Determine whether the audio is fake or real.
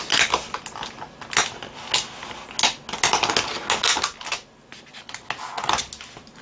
real